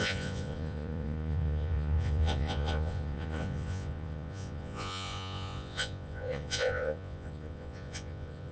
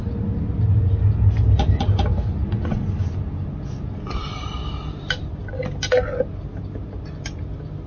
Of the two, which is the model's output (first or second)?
first